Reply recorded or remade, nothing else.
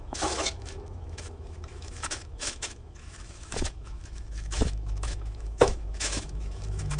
remade